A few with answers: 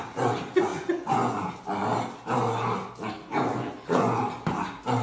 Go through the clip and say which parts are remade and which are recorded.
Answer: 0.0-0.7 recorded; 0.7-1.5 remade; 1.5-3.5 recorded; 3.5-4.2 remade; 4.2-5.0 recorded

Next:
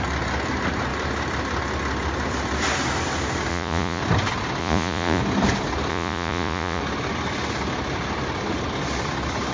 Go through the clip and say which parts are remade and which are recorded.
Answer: 0.0-3.5 recorded; 3.5-4.0 remade; 4.0-4.6 recorded; 4.6-5.2 remade; 5.2-5.9 recorded; 5.9-6.8 remade; 6.8-9.5 recorded

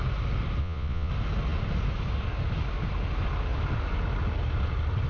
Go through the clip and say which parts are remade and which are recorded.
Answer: 0.0-0.6 recorded; 0.6-1.1 remade; 1.1-5.1 recorded